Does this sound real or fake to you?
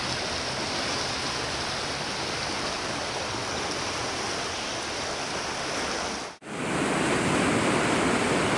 real